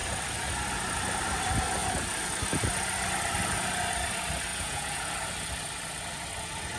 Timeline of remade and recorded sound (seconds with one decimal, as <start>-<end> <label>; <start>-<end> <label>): 0.0-4.5 recorded; 4.5-5.1 remade; 5.1-6.8 recorded